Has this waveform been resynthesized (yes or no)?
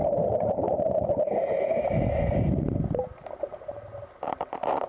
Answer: no